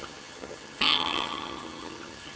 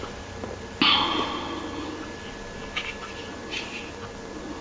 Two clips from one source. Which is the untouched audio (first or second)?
second